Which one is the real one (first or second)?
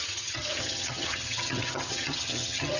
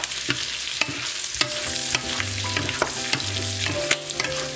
second